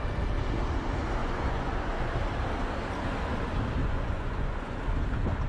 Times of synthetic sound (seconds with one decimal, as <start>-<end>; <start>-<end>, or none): 1.2-2.1; 3.8-4.8